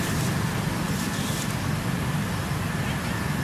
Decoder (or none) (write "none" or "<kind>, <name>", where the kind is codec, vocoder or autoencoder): none